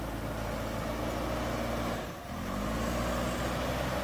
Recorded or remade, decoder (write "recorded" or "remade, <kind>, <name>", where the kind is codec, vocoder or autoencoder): recorded